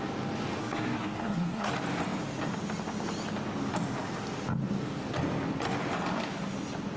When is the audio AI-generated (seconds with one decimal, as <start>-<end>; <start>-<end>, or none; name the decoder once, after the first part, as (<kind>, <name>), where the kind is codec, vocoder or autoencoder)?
0.6-1.7 (codec, SNAC)